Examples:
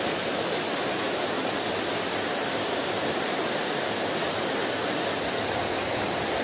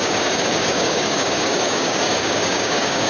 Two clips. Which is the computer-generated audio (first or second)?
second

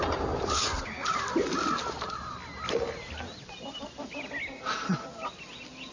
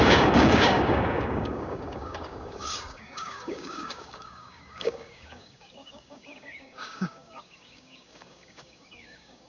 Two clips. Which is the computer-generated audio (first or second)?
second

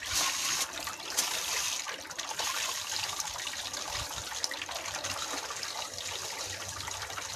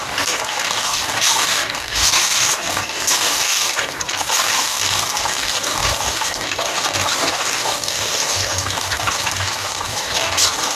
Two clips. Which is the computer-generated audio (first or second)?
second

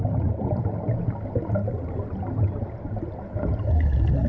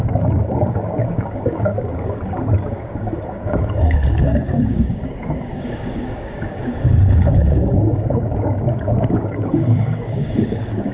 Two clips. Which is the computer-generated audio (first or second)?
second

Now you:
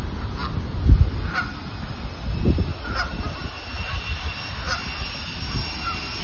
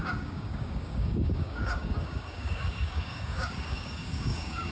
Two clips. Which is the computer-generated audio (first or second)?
second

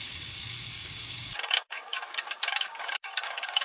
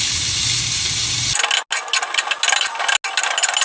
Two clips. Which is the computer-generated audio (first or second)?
first